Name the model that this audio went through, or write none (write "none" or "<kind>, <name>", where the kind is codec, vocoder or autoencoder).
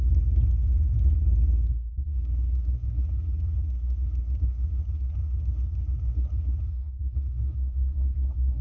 codec, SNAC